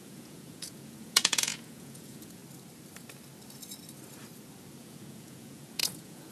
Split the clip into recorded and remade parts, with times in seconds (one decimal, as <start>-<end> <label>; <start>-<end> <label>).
0.0-2.4 remade; 2.4-4.8 recorded; 4.8-6.3 remade